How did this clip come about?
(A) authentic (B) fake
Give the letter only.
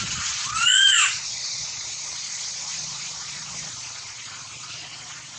B